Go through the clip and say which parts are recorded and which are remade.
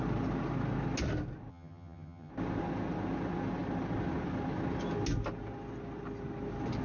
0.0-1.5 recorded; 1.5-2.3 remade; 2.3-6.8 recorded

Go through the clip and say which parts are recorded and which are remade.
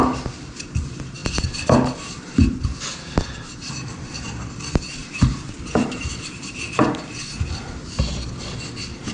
0.0-5.0 recorded; 5.0-6.8 remade; 6.8-9.1 recorded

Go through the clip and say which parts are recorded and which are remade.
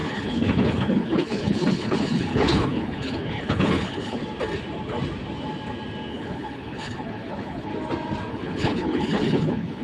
0.0-4.2 remade; 4.2-6.1 recorded; 6.1-7.7 remade; 7.7-8.3 recorded; 8.3-9.8 remade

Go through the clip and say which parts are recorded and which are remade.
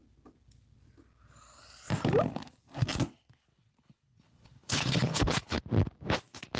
0.0-3.5 recorded; 3.5-5.6 remade; 5.6-6.6 recorded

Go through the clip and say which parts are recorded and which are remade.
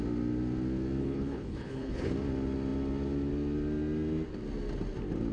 0.0-1.0 recorded; 1.0-2.1 remade; 2.1-5.3 recorded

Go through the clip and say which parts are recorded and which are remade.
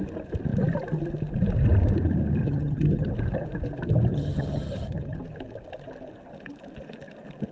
0.0-2.4 recorded; 2.4-3.1 remade; 3.1-4.1 recorded; 4.1-5.2 remade; 5.2-7.5 recorded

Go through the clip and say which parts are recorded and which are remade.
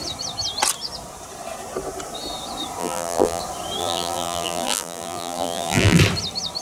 0.0-2.8 recorded; 2.8-3.4 remade; 3.4-3.8 recorded; 3.8-6.0 remade; 6.0-6.6 recorded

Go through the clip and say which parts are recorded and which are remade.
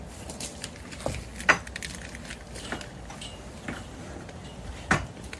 0.0-1.3 remade; 1.3-4.5 recorded; 4.5-5.4 remade